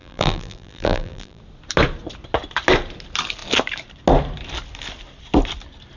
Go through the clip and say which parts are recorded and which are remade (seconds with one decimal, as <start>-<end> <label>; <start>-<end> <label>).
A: 0.0-1.4 remade; 1.4-6.0 recorded